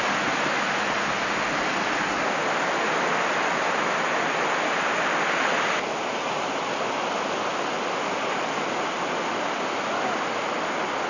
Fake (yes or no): no